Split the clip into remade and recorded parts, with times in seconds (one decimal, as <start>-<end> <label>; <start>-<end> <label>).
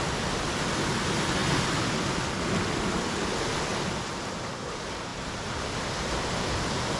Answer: 0.0-7.0 recorded